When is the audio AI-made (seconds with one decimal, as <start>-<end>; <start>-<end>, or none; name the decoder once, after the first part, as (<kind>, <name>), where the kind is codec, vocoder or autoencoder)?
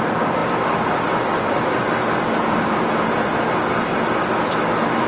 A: 4.2-5.1 (autoencoder, DAC-VAE)